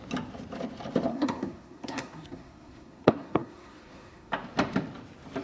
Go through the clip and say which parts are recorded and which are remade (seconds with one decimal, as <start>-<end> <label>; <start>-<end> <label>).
0.0-1.1 recorded; 1.1-4.3 remade; 4.3-5.4 recorded